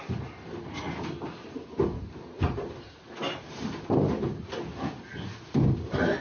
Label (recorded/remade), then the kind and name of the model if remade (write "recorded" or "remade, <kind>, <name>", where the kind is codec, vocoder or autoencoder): recorded